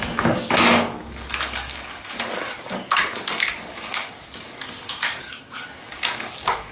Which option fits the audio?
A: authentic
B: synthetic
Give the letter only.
B